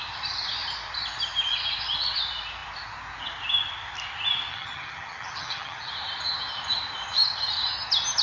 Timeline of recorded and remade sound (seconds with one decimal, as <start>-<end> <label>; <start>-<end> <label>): 0.0-4.5 recorded; 4.5-5.9 remade; 5.9-8.2 recorded